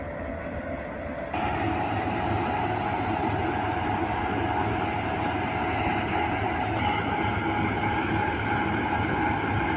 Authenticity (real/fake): real